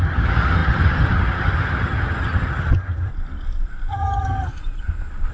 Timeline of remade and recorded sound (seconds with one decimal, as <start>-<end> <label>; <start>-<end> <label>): 0.0-3.1 remade; 3.1-3.9 recorded; 3.9-4.5 remade; 4.5-5.3 recorded